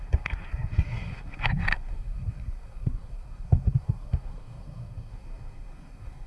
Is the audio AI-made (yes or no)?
yes